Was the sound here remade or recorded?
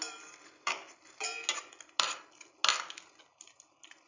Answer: recorded